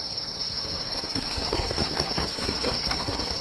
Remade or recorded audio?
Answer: remade